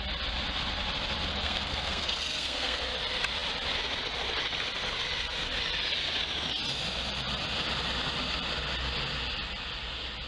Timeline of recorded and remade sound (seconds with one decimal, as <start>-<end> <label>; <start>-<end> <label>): 0.0-1.3 recorded; 1.3-2.8 remade; 2.8-10.3 recorded